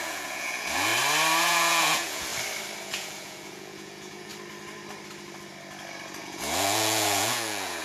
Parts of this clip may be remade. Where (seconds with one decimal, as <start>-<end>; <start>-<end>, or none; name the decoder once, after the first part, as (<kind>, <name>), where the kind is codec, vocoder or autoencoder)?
0.0-0.9 (vocoder, Vocos); 1.4-2.3; 2.8-4.3; 6.2-7.8